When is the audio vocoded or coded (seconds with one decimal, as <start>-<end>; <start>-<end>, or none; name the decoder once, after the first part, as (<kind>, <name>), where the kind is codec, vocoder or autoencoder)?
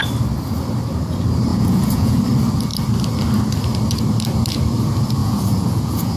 1.5-2.2 (vocoder, Vocos); 5.2-6.2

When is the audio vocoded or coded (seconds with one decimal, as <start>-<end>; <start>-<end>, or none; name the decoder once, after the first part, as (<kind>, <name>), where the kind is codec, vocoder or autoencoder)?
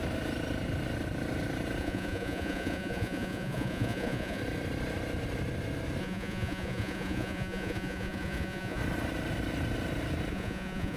1.8-4.4 (vocoder, Vocos); 6.0-8.8; 10.3-11.0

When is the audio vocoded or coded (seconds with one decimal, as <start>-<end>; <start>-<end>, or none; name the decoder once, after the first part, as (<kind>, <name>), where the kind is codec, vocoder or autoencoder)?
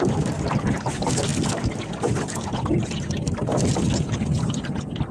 none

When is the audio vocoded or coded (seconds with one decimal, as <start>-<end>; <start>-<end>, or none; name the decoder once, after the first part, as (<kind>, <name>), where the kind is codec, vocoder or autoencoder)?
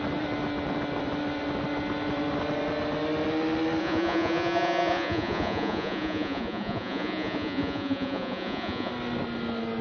3.8-8.9 (vocoder, Vocos)